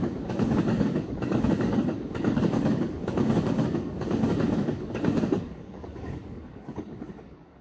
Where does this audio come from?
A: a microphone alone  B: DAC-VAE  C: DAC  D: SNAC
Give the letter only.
C